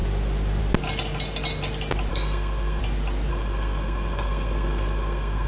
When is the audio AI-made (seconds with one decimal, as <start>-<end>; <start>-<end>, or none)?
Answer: 2.1-2.8; 3.3-5.5